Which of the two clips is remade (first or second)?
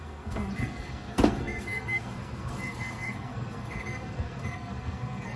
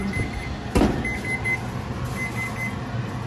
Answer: first